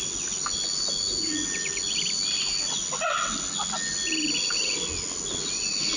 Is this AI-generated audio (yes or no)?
no